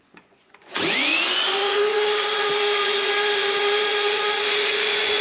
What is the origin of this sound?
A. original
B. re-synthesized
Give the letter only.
B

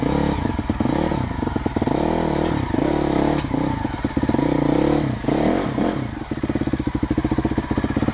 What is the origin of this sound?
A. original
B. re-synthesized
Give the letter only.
A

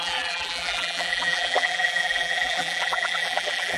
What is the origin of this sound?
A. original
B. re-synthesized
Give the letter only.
B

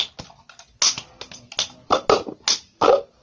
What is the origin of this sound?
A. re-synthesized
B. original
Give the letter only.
B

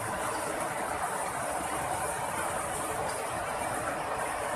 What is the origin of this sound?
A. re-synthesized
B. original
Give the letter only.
A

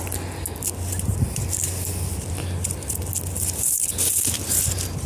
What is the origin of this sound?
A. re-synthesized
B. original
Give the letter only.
B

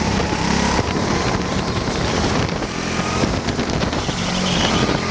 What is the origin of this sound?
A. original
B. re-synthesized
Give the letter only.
B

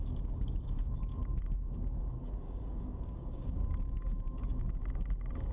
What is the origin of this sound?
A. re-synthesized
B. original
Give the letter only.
A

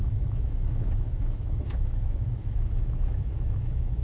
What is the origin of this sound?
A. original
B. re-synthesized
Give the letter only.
B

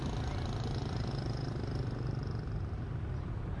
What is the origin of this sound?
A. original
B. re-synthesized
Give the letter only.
A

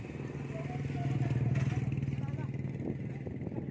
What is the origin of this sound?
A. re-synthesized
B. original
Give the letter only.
B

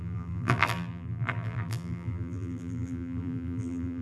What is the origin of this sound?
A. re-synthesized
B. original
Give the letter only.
A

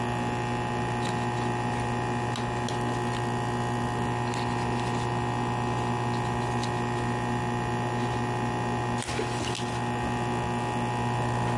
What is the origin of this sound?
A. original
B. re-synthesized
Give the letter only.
A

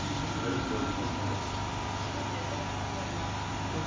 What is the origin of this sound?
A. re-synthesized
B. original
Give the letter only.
B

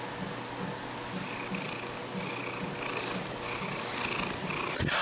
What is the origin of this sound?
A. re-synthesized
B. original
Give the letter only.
B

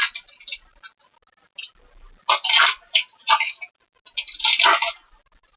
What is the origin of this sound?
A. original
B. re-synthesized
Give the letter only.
A